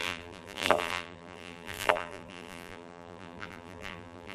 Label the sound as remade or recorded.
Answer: remade